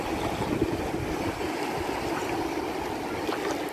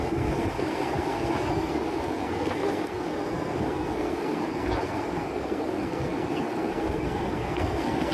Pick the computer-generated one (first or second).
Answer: second